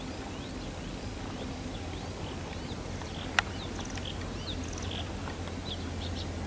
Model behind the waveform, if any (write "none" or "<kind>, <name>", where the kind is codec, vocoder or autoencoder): none